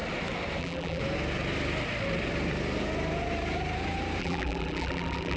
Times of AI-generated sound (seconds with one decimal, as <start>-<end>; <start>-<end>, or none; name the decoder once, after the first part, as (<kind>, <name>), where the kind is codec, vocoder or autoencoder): 0.6-1.0 (vocoder, BigVGAN v2); 4.2-5.4